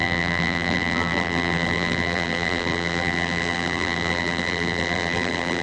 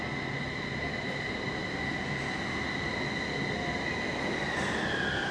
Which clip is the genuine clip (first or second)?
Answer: second